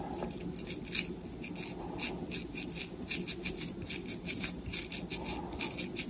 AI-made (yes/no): no